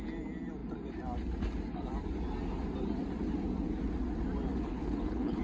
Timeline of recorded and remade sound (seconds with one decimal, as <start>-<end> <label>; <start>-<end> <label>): 0.0-4.5 recorded; 4.5-5.4 remade